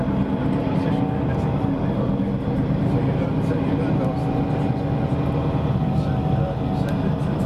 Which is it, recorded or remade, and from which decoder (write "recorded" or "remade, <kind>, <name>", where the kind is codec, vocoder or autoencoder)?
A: recorded